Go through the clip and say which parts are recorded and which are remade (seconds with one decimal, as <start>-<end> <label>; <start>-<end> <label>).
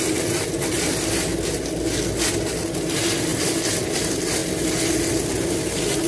0.0-6.1 recorded